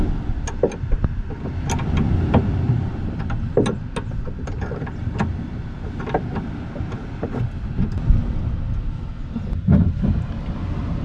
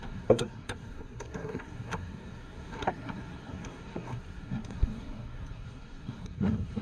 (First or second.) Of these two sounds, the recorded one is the first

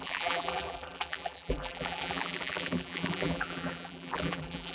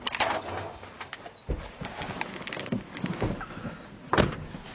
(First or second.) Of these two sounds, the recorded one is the second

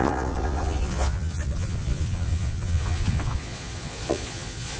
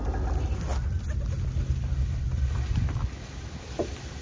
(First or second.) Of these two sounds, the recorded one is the second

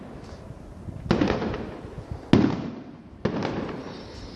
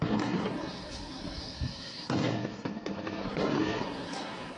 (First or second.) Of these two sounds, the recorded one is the first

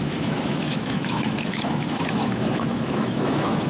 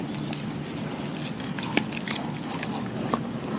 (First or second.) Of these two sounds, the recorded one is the second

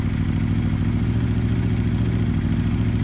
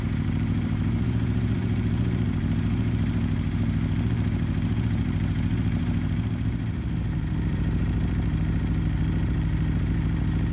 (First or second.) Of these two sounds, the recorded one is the first